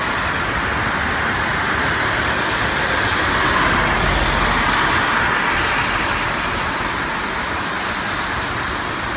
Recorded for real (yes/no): yes